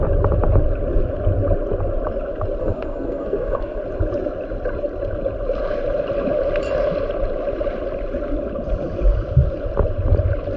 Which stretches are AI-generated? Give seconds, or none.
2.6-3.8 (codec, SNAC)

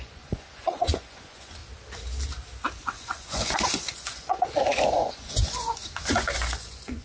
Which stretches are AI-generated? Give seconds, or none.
0.0-1.6 (vocoder, Vocos); 2.8-7.0

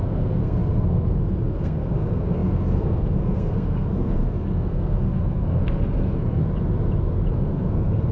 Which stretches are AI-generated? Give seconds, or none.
0.0-6.4 (codec, SNAC); 7.3-8.1